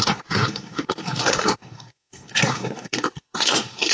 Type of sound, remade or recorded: remade